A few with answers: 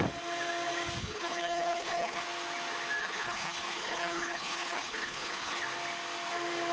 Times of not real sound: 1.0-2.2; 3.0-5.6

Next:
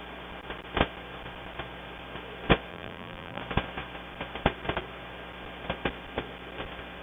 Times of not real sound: 2.7-3.4

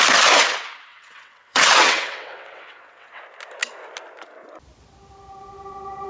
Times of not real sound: 0.9-3.2

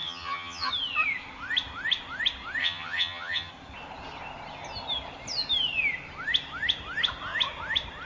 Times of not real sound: 0.0-0.7; 2.6-3.5

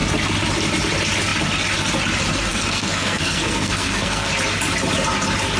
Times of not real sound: 2.5-4.3

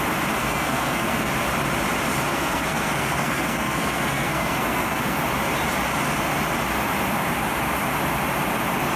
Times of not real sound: 0.4-1.3; 2.3-5.2

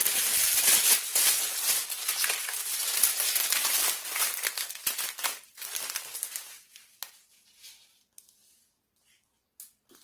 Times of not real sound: 0.0-0.6

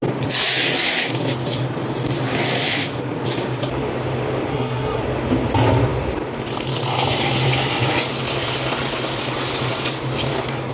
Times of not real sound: 4.5-5.0